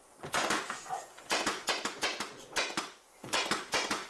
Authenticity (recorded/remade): remade